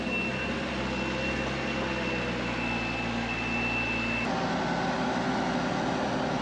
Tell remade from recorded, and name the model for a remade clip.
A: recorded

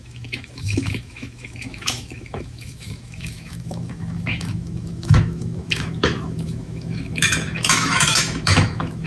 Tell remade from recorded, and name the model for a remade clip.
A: remade, autoencoder, DAC-VAE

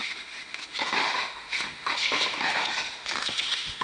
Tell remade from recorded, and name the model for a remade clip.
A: remade, autoencoder, DAC-VAE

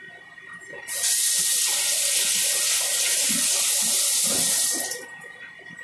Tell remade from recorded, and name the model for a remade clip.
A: recorded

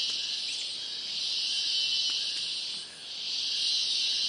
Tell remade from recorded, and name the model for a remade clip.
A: recorded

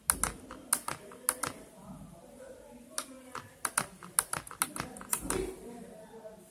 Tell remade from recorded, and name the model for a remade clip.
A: recorded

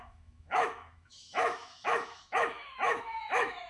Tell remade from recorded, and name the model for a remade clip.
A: remade, autoencoder, DAC-VAE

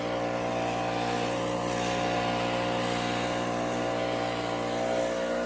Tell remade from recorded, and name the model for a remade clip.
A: recorded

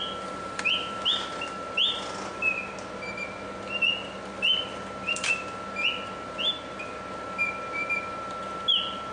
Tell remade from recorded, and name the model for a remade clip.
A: recorded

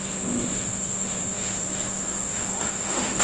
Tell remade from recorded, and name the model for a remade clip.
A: remade, autoencoder, DAC-VAE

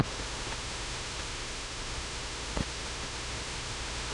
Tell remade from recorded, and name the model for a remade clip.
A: remade, autoencoder, DAC-VAE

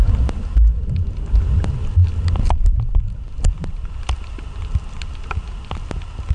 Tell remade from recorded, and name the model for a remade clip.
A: recorded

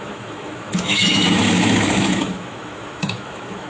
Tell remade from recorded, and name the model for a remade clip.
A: remade, autoencoder, DAC-VAE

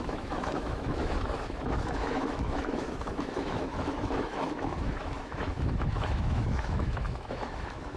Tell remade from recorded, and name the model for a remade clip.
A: remade, autoencoder, DAC-VAE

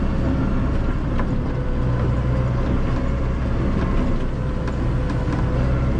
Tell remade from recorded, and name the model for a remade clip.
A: recorded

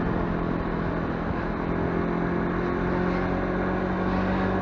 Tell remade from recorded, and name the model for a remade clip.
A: recorded